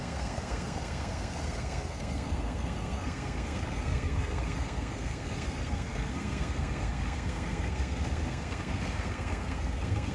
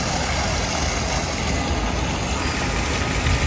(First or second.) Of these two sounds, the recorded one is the second